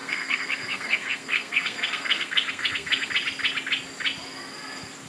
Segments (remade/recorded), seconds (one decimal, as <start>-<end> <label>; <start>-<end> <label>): 0.0-3.1 remade; 3.1-5.1 recorded